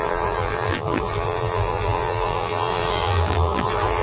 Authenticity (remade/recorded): remade